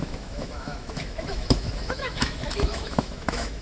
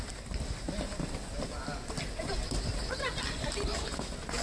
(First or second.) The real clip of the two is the second